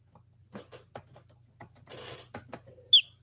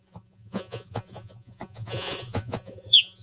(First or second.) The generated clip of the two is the second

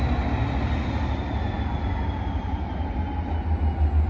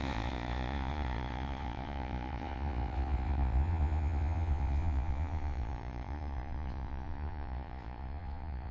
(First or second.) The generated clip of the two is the second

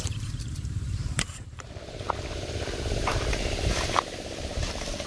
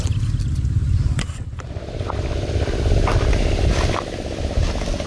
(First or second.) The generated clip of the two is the first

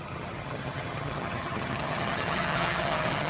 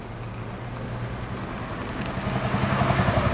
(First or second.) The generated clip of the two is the first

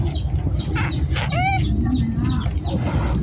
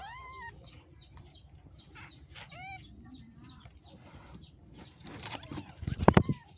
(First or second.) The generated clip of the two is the second